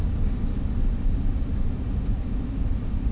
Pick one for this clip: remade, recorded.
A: recorded